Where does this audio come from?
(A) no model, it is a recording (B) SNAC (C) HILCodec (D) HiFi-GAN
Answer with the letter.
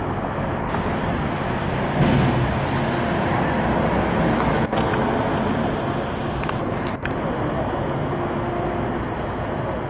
A